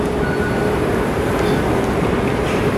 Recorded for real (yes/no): yes